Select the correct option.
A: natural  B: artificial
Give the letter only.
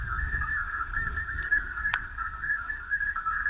B